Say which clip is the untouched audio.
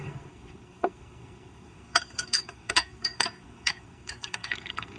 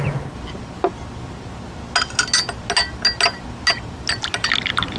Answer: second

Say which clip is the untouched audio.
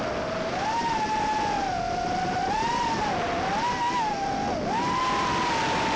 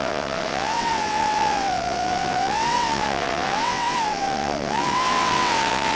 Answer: first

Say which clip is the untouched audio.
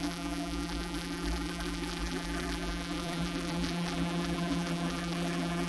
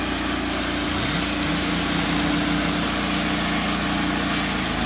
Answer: second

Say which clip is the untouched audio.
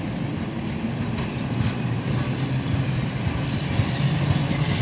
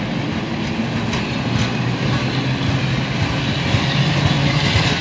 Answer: second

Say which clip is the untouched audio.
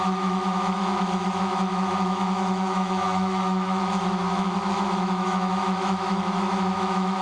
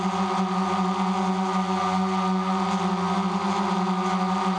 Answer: second